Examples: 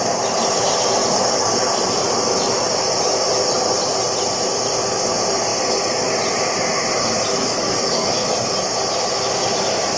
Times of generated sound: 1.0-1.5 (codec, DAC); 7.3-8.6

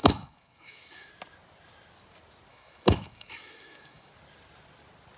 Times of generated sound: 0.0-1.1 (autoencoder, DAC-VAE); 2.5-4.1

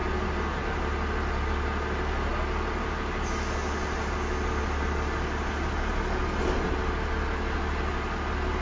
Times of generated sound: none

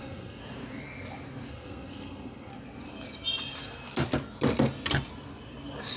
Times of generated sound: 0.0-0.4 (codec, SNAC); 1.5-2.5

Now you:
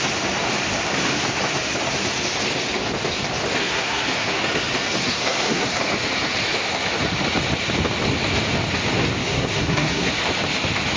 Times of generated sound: 3.6-4.4 (codec, SNAC); 5.0-5.8; 9.2-10.1

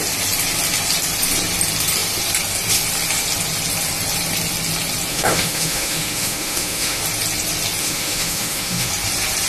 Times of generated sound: 5.1-7.0 (autoencoder, DAC-VAE); 7.8-8.9